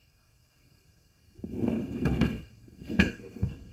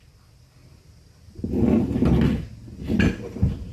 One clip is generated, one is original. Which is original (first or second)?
second